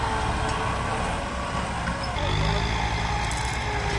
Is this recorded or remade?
recorded